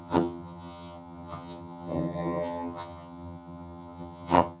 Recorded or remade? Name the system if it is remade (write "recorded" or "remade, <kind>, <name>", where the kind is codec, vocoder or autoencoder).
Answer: remade, vocoder, HiFi-GAN